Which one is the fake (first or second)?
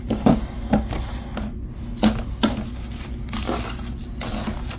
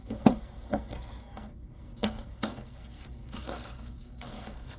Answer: second